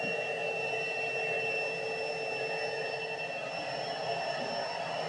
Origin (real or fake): real